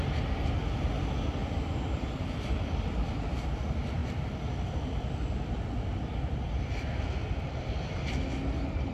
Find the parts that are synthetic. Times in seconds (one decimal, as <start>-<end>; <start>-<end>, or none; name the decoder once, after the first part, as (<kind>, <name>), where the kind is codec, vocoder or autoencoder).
1.4-3.4 (vocoder, BigVGAN v2); 4.0-7.9